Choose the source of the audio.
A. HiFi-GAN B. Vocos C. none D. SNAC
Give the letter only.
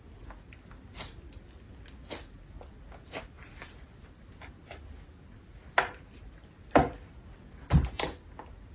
C